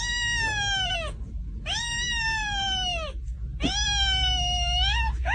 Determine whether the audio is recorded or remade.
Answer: recorded